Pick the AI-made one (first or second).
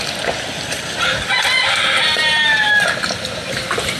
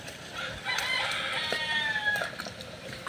second